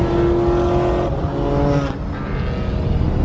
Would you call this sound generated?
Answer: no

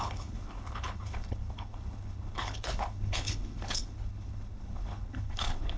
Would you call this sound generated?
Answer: yes